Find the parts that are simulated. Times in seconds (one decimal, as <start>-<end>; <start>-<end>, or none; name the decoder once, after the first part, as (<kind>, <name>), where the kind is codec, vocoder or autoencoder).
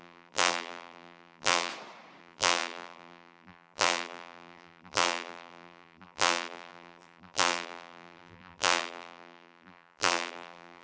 0.0-1.7 (vocoder, BigVGAN v2); 2.2-10.8